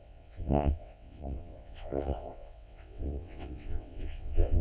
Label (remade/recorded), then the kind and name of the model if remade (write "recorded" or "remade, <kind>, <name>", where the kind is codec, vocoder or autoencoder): remade, vocoder, WaveNeXt